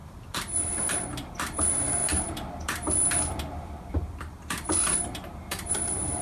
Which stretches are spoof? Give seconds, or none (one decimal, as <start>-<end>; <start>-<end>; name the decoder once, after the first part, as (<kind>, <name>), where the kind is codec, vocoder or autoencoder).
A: 0.0-6.2 (vocoder, BigVGAN v2)